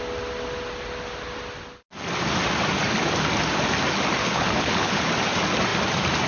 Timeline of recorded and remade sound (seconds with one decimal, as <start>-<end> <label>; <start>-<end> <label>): 0.0-4.2 recorded; 4.2-5.1 remade; 5.1-6.3 recorded

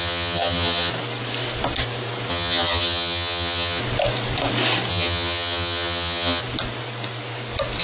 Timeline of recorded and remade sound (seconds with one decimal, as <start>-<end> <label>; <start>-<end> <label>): 0.0-0.9 remade; 0.9-2.3 recorded; 2.3-3.8 remade; 3.8-4.9 recorded; 4.9-6.4 remade; 6.4-7.8 recorded

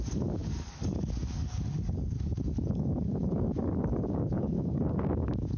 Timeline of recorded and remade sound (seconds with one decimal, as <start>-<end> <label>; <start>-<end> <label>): 0.0-5.6 remade

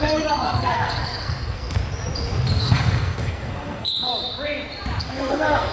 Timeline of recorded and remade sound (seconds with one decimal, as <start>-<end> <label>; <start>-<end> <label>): 0.0-1.8 remade; 1.8-2.6 recorded; 2.6-4.1 remade; 4.1-5.0 recorded; 5.0-5.7 remade